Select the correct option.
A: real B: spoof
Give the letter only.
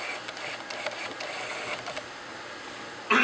A